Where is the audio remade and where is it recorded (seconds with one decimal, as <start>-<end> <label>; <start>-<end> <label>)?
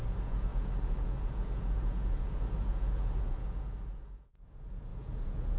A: 0.0-5.6 remade